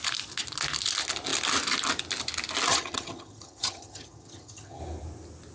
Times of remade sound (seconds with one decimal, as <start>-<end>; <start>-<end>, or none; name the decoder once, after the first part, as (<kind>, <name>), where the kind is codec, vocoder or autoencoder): 2.7-4.8 (vocoder, HiFi-GAN)